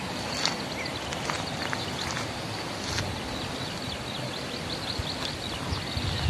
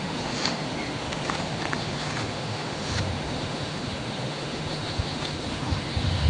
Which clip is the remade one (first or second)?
second